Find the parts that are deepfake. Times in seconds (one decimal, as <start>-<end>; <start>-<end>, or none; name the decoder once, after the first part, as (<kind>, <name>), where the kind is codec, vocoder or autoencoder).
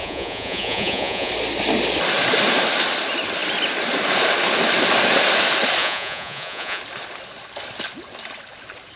0.0-1.3 (vocoder, Vocos); 5.8-6.8